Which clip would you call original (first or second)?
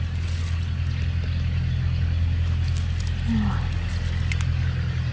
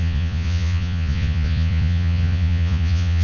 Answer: first